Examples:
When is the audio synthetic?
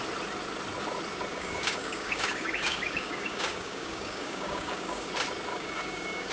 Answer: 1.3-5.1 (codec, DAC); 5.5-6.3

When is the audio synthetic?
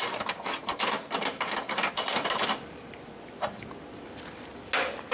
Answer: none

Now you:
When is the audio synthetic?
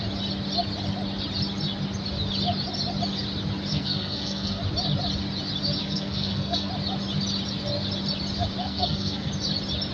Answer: 3.7-4.6 (codec, SNAC); 5.8-6.7; 8.6-9.3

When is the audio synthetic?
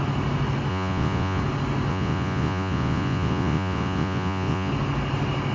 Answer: 0.7-1.4 (vocoder, Vocos); 1.9-4.7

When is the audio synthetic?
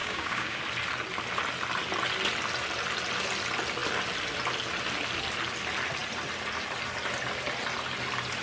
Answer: 0.0-0.6 (codec, DAC)